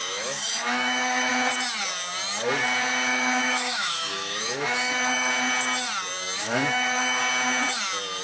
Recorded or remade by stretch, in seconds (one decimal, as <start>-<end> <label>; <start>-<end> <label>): 0.0-1.3 remade; 1.3-3.1 recorded; 3.1-5.3 remade; 5.3-6.4 recorded; 6.4-7.2 remade; 7.2-8.2 recorded